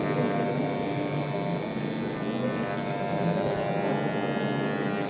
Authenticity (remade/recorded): recorded